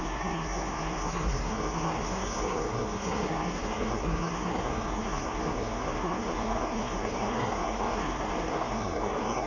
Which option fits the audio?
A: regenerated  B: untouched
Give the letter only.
A